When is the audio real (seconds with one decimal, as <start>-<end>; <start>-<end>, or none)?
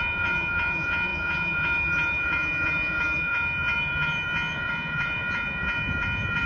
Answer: none